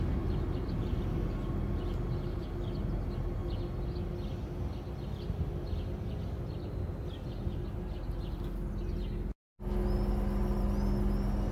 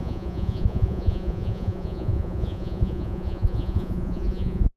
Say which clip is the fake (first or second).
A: second